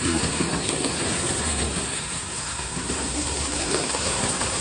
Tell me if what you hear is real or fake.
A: fake